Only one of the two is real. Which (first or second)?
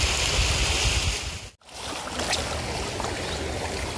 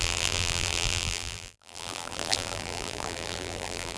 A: first